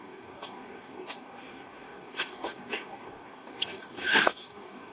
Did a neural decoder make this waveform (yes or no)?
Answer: yes